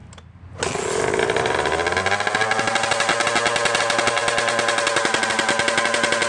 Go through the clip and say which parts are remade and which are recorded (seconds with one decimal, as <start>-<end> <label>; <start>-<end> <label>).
0.0-6.3 recorded